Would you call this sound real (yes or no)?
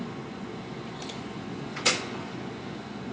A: no